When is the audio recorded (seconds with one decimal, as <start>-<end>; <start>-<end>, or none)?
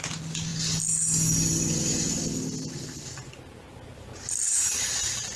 0.0-5.4